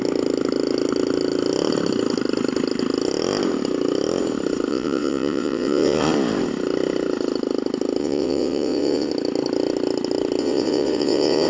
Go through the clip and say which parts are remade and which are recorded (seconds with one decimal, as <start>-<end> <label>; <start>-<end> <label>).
0.0-4.7 recorded; 4.7-6.0 remade; 6.0-8.0 recorded; 8.0-9.1 remade; 9.1-10.4 recorded; 10.4-11.5 remade